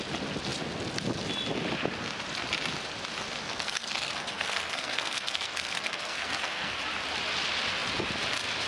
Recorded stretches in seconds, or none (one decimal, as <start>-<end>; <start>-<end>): 0.0-3.4; 6.8-8.7